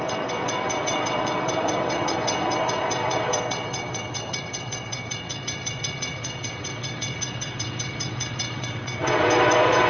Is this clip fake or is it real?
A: fake